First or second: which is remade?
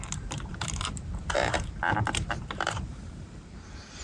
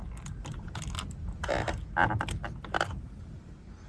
first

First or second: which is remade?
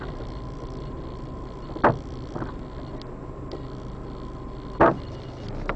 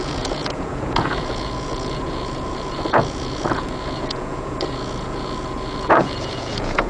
second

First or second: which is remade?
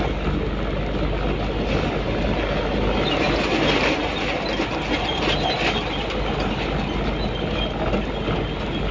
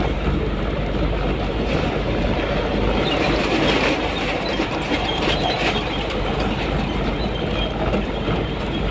second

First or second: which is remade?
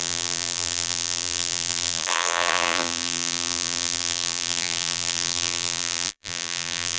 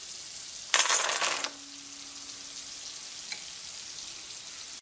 first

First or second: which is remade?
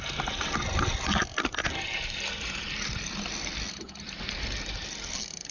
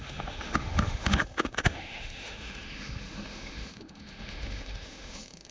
second